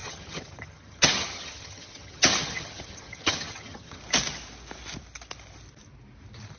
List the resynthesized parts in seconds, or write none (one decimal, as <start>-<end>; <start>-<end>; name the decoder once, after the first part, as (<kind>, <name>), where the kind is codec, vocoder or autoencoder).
0.0-4.0 (vocoder, HiFi-GAN)